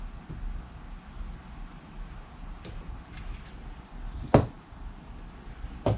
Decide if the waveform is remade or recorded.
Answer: recorded